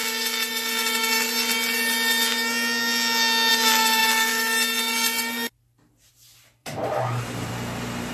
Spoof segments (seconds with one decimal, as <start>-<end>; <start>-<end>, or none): 6.6-7.5